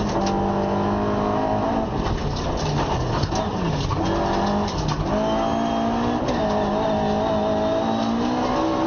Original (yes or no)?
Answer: yes